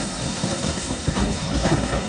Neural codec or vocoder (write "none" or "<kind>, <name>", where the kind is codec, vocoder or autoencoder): codec, SNAC